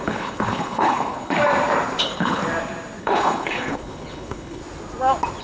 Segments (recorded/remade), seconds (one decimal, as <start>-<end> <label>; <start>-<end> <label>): 0.0-1.4 remade; 1.4-2.0 recorded; 2.0-2.4 remade; 2.4-3.0 recorded; 3.0-4.6 remade; 4.6-5.4 recorded